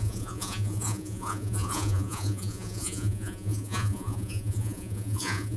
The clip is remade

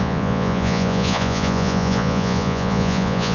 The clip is remade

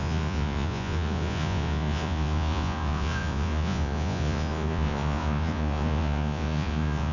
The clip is remade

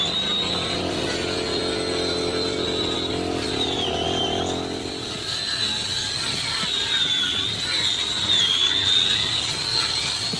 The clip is recorded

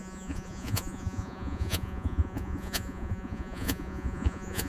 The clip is remade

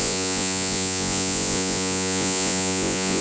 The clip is remade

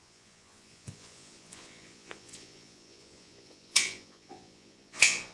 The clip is remade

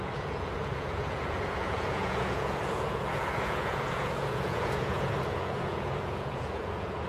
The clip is remade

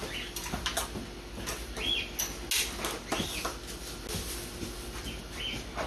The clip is recorded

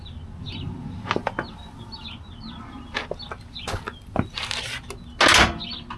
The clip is recorded